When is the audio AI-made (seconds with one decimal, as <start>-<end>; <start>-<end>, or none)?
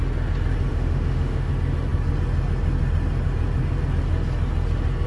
0.7-1.5